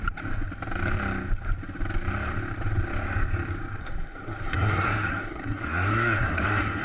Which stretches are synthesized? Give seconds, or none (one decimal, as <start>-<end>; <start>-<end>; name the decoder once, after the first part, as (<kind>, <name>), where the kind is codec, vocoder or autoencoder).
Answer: 3.8-6.8 (codec, SNAC)